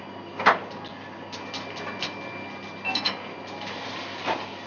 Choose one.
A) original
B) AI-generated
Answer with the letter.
A